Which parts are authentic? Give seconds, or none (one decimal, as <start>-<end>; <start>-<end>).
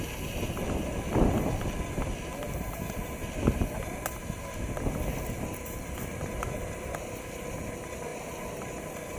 0.0-9.2